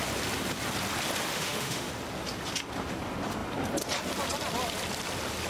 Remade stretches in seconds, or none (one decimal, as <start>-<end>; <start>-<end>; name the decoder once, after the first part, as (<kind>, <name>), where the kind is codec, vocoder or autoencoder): 1.3-1.9 (autoencoder, DAC-VAE)

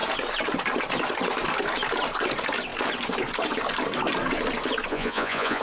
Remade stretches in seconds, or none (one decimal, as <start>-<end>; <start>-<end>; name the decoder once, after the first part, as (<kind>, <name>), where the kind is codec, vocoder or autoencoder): 4.9-5.6 (vocoder, Vocos)

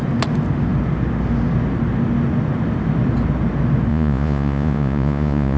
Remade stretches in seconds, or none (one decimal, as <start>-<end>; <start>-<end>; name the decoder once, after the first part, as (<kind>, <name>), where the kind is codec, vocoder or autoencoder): 3.9-5.6 (vocoder, Vocos)

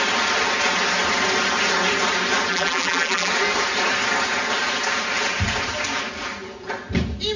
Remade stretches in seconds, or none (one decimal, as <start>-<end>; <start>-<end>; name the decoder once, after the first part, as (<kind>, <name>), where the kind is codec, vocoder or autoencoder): 2.5-3.3 (vocoder, BigVGAN v2)